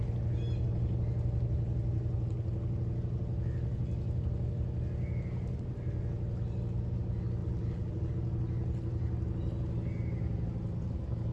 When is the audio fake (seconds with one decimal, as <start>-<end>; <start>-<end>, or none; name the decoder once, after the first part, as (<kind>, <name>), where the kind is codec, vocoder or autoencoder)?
7.4-8.1 (vocoder, BigVGAN v2)